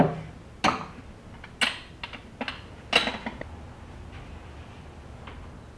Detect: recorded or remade recorded